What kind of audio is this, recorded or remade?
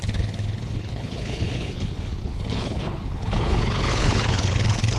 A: remade